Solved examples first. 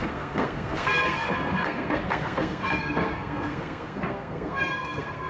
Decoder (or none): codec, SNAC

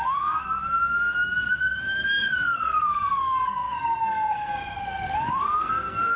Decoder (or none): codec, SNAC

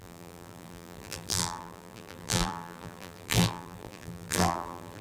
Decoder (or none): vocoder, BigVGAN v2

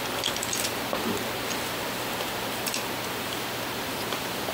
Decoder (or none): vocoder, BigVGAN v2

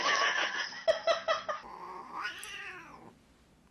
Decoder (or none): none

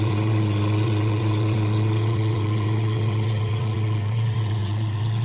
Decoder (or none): vocoder, WaveNeXt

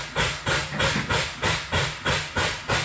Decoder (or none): none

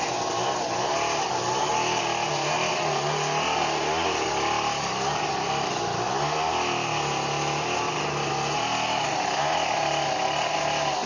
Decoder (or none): none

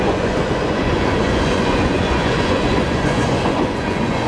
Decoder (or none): vocoder, Vocos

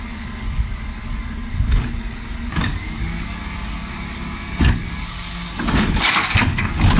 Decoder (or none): codec, DAC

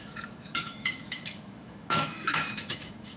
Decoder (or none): autoencoder, DAC-VAE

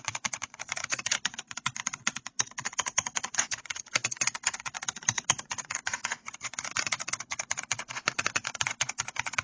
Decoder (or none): vocoder, Vocos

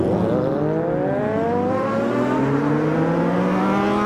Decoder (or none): none